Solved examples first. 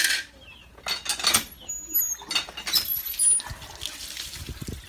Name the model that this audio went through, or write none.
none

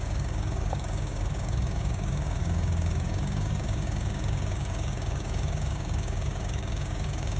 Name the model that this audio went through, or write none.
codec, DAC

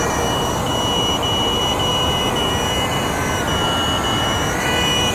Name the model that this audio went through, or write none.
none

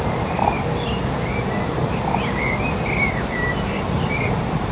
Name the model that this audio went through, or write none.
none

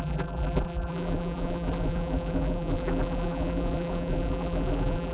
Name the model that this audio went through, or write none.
vocoder, BigVGAN v2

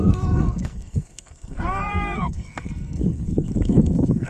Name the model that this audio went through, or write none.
codec, SNAC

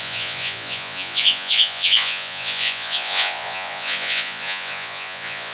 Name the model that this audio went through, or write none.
vocoder, Vocos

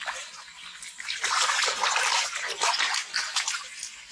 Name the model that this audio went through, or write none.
none